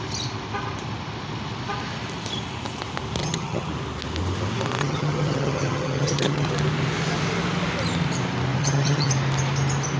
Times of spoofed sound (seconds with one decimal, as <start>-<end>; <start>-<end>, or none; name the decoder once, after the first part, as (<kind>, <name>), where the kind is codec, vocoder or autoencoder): 3.2-3.7 (vocoder, HiFi-GAN); 4.8-6.5; 8.6-9.1